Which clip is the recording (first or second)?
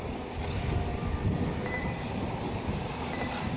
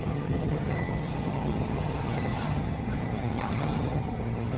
first